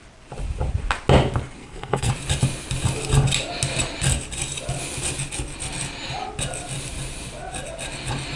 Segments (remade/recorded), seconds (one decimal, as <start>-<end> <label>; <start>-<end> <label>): 0.0-1.6 recorded; 1.6-2.1 remade; 2.1-8.4 recorded